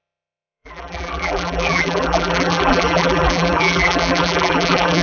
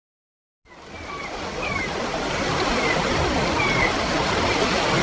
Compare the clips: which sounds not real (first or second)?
first